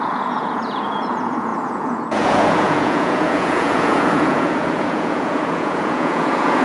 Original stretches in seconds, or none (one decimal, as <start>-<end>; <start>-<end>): none